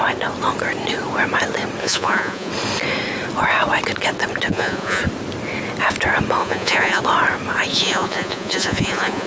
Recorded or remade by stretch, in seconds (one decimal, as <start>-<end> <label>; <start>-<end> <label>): 0.0-1.8 recorded; 1.8-2.5 remade; 2.5-4.5 recorded; 4.5-5.0 remade; 5.0-6.4 recorded; 6.4-7.0 remade; 7.0-7.7 recorded; 7.7-9.3 remade

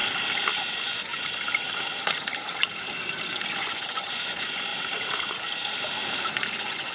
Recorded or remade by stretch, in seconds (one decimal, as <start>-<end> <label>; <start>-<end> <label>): 0.0-0.7 recorded; 0.7-1.1 remade; 1.1-3.5 recorded; 3.5-4.7 remade; 4.7-6.3 recorded; 6.3-6.9 remade